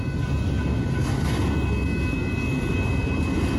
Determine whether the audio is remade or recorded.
recorded